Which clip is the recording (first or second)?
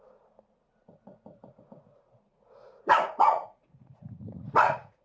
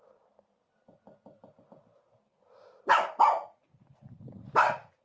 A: second